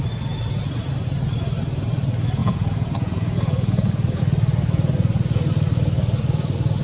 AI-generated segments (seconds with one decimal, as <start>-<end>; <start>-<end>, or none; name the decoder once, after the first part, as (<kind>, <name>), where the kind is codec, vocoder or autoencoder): 2.4-4.2 (vocoder, Vocos)